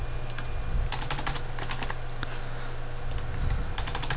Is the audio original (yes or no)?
yes